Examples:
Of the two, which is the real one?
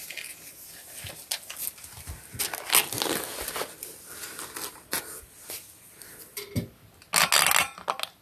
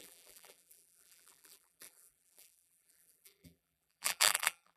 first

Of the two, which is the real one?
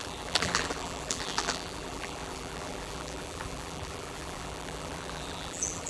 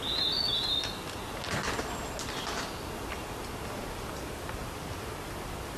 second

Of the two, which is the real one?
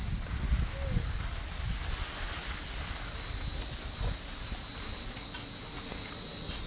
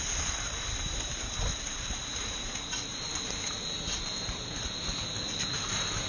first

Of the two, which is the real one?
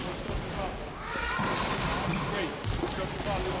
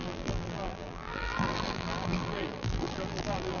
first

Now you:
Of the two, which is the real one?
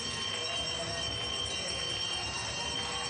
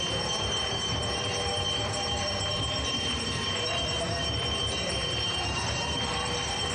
first